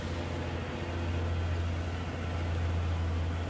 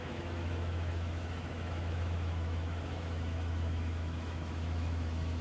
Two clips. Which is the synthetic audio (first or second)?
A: second